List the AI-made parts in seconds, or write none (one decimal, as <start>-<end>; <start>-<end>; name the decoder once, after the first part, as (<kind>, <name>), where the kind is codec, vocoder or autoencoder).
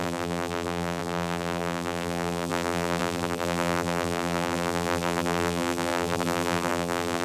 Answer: 0.0-7.2 (vocoder, BigVGAN v2)